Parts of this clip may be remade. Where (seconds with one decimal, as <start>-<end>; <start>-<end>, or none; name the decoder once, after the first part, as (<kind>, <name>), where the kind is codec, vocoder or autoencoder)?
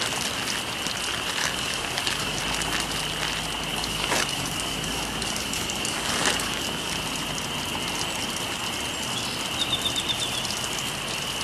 1.4-2.4 (codec, DAC); 3.7-6.9